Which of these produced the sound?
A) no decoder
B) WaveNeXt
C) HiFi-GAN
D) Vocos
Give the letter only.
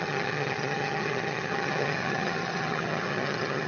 C